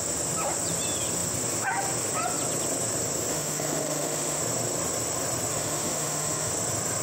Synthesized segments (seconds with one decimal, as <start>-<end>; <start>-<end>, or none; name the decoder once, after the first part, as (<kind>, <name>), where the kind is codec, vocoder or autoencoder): 3.3-4.4 (autoencoder, DAC-VAE); 5.5-6.5